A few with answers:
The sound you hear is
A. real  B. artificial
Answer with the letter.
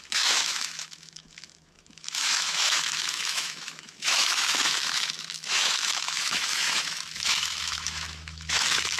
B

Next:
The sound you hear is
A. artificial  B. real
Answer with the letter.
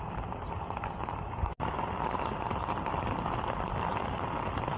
B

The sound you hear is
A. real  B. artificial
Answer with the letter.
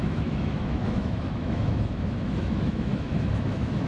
B